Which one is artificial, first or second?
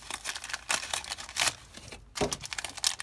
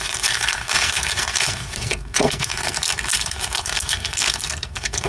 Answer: second